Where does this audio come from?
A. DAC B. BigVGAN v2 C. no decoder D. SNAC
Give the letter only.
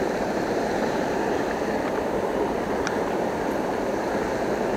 B